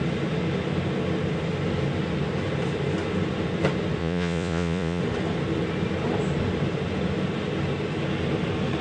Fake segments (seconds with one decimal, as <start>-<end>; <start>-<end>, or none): 4.0-5.0